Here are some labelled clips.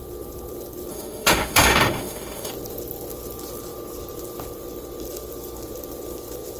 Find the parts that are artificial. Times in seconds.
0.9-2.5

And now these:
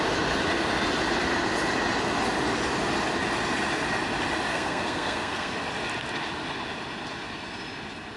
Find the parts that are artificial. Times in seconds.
4.5-5.5

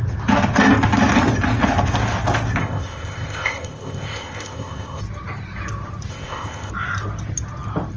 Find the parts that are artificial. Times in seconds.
2.6-5.0; 6.1-6.7

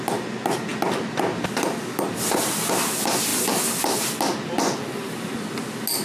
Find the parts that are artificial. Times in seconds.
none